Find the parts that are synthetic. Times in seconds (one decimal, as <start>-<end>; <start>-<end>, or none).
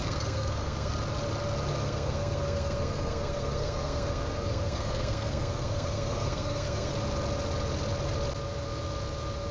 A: 0.0-0.9; 1.7-6.9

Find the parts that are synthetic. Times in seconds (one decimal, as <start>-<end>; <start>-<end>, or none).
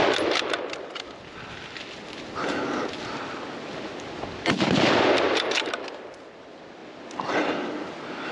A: none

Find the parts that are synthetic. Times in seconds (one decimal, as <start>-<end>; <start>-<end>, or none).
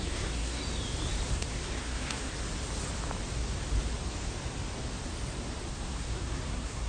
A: 0.0-0.6; 1.3-2.3; 5.7-6.9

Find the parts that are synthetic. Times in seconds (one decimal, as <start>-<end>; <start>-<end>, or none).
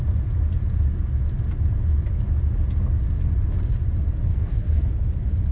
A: 4.3-4.9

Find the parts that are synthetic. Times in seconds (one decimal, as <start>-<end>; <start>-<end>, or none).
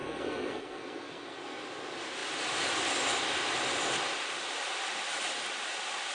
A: 0.0-1.6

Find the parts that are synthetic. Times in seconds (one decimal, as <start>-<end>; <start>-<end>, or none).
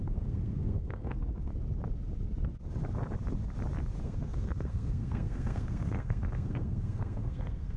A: 0.0-1.5; 4.0-7.8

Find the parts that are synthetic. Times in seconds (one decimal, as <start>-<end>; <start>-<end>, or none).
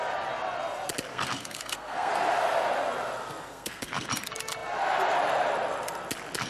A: 1.1-2.1; 3.4-4.1